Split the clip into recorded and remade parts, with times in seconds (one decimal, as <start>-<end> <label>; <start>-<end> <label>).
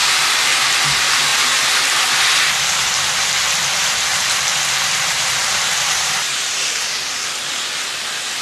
0.0-0.6 remade; 0.6-4.1 recorded; 4.1-6.8 remade; 6.8-8.4 recorded